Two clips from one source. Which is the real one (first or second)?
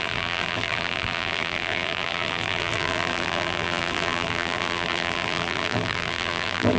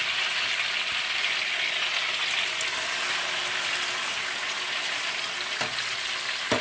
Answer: second